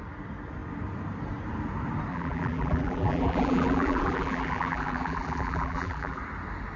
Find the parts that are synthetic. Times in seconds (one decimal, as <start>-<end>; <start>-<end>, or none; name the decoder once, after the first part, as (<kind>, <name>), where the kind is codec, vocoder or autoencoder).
2.1-6.2 (vocoder, BigVGAN v2)